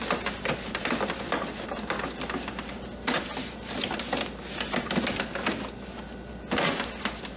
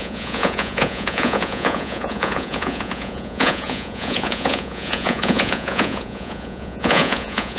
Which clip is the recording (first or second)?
first